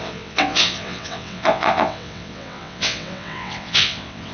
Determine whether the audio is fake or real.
fake